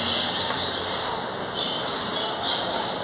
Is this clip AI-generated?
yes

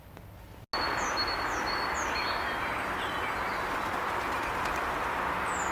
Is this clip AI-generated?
no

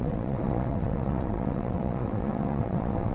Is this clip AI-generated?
yes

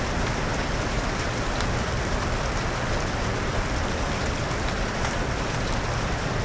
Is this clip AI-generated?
no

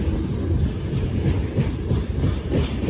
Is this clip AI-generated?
no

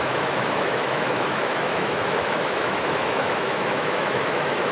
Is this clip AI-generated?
yes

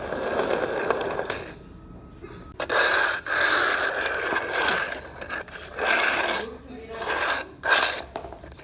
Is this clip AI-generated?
no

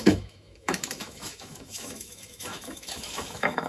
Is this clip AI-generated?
yes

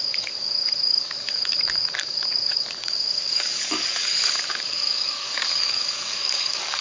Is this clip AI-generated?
yes